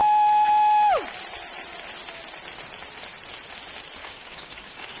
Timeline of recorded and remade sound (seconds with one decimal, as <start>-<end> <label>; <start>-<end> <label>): 0.0-4.0 recorded; 4.0-5.0 remade